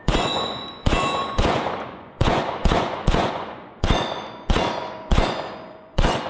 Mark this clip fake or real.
fake